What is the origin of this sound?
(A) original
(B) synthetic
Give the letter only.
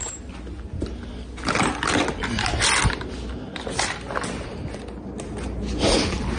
A